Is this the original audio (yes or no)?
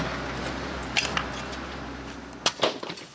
yes